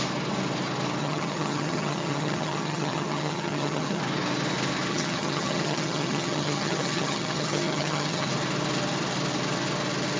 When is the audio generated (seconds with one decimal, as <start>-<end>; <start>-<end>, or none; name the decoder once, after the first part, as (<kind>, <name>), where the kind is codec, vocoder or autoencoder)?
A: 1.0-4.0 (vocoder, HiFi-GAN); 4.9-8.3